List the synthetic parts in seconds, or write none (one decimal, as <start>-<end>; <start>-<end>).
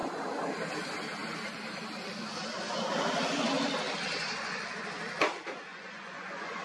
4.1-4.6; 5.7-6.6